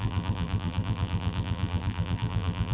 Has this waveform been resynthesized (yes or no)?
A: yes